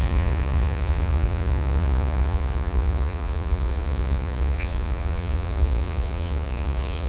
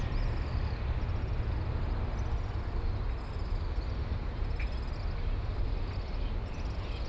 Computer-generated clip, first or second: first